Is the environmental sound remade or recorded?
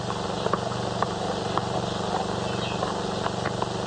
recorded